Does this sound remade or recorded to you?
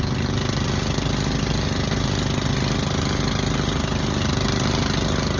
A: recorded